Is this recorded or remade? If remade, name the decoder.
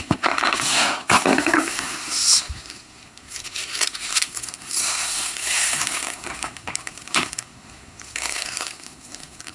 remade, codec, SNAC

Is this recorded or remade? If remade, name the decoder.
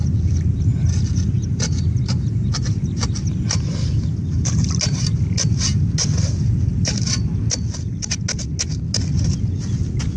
recorded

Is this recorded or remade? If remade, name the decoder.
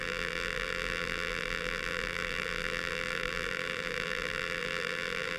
remade, vocoder, BigVGAN v2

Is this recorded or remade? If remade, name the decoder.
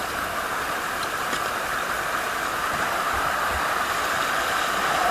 recorded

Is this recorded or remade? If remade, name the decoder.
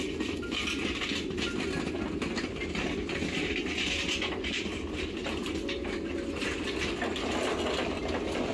recorded